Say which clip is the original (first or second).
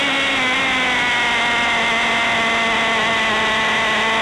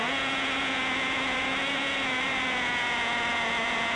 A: first